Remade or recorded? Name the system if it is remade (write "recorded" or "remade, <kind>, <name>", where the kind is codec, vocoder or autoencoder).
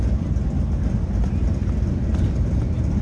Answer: recorded